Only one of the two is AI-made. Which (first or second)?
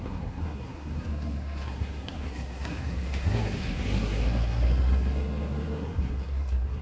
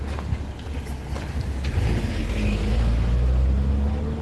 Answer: first